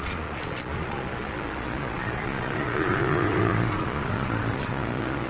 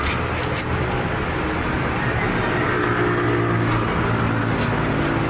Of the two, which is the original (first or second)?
second